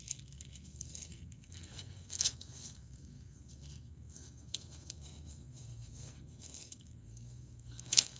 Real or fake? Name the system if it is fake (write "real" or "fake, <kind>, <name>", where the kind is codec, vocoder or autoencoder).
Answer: fake, codec, SNAC